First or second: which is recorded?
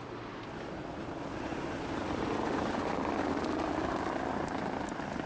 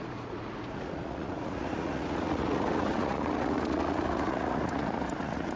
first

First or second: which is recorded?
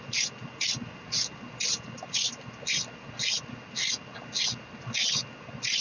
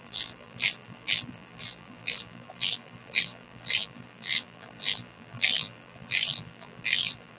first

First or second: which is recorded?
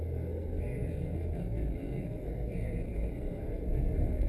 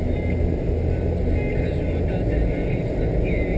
second